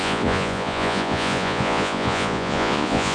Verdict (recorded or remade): remade